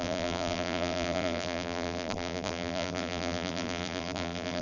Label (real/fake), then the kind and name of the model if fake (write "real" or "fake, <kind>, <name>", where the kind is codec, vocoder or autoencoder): fake, vocoder, BigVGAN v2